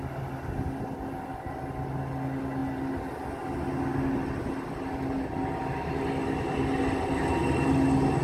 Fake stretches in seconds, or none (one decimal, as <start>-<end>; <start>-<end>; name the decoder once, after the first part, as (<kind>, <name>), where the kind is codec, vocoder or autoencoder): none